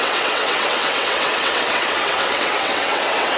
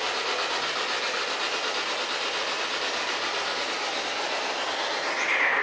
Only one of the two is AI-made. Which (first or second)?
first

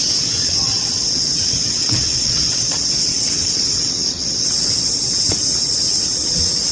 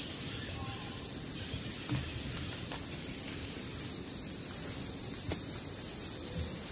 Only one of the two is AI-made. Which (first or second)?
first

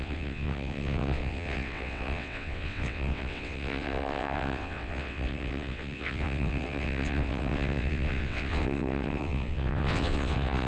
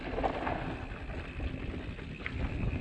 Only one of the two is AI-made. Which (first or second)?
first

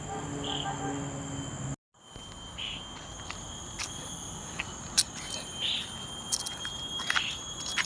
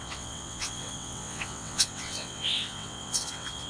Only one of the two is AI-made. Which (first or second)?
second